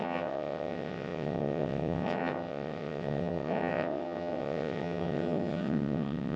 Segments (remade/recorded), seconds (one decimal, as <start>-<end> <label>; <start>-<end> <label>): 0.0-6.4 remade